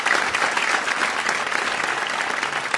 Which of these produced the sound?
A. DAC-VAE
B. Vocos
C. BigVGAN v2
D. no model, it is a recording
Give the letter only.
D